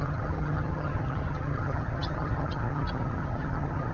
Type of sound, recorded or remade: remade